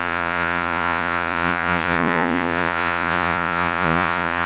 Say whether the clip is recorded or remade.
remade